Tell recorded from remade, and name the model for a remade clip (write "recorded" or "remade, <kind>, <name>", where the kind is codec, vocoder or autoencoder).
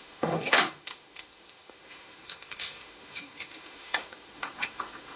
remade, autoencoder, DAC-VAE